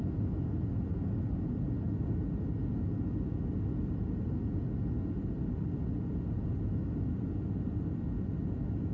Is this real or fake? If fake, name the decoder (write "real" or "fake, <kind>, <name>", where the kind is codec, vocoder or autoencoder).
real